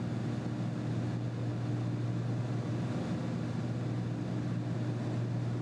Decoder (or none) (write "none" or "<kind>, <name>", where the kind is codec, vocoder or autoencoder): none